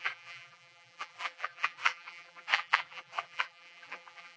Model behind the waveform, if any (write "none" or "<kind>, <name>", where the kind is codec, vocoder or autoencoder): vocoder, BigVGAN v2